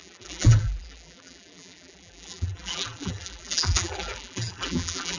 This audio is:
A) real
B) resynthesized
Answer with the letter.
B